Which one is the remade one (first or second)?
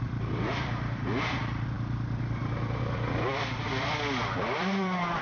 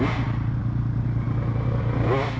first